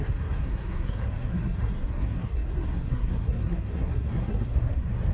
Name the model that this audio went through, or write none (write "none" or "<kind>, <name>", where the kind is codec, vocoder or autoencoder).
codec, SNAC